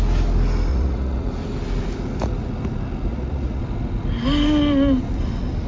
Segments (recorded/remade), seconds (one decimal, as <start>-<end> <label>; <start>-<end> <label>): 0.0-0.7 recorded; 0.7-1.3 remade; 1.3-3.1 recorded; 3.1-3.6 remade; 3.6-5.7 recorded